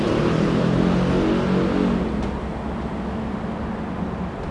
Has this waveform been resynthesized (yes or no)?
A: no